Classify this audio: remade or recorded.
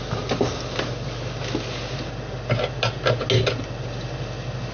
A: recorded